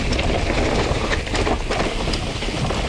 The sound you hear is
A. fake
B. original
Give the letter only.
B